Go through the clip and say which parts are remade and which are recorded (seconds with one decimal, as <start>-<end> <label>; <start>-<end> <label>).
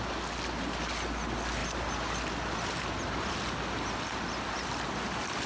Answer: 0.0-5.5 recorded